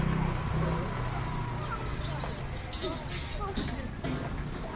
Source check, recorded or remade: recorded